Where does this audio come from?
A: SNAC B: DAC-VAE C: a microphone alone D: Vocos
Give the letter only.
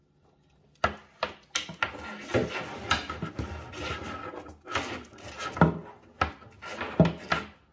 C